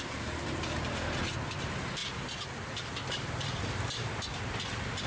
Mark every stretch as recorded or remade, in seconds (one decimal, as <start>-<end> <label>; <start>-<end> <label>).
0.0-5.1 recorded